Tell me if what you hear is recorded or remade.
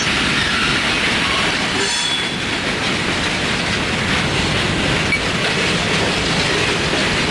recorded